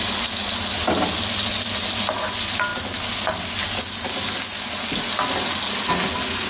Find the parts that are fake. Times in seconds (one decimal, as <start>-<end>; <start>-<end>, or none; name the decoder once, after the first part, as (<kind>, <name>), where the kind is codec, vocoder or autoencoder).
none